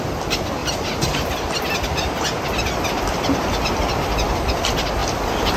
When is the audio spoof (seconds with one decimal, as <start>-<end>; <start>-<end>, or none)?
0.6-1.6; 5.0-5.6